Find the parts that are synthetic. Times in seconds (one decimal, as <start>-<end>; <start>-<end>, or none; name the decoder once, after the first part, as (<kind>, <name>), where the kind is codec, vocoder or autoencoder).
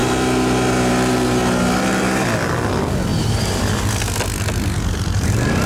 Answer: 0.0-0.9 (vocoder, BigVGAN v2); 3.1-4.0